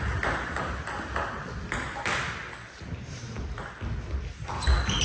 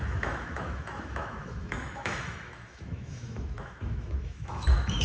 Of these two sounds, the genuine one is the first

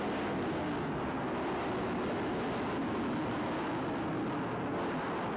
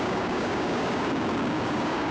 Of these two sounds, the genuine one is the first